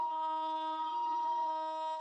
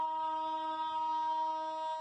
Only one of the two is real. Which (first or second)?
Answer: second